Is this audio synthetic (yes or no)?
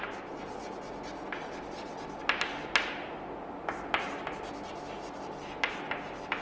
no